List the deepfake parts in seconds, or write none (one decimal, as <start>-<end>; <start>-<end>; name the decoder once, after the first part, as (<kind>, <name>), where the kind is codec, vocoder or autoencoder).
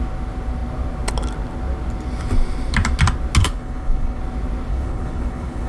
3.4-4.2 (codec, HILCodec); 4.7-5.7